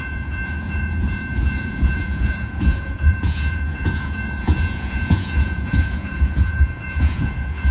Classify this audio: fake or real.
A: fake